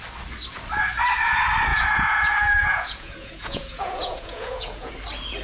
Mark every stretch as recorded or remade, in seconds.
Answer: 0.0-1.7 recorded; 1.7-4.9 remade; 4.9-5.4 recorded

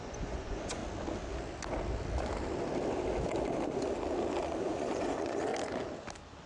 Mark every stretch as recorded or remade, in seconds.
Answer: 0.0-0.8 remade; 0.8-4.6 recorded; 4.6-5.5 remade; 5.5-6.5 recorded